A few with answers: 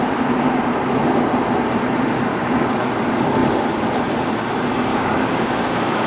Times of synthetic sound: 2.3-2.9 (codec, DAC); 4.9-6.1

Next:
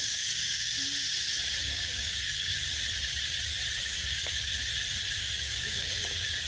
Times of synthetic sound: 0.0-0.7 (codec, DAC); 1.6-2.5; 3.8-4.5; 5.2-6.5

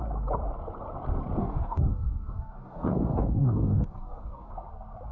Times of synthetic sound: 1.4-4.5 (codec, DAC)